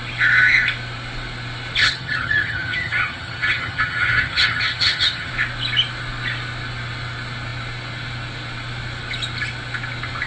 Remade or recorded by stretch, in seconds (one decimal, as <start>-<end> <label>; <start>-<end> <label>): 0.0-1.8 recorded; 1.8-5.3 remade; 5.3-10.3 recorded